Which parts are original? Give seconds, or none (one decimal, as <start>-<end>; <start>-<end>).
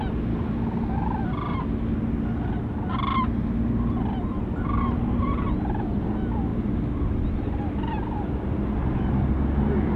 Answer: 0.0-10.0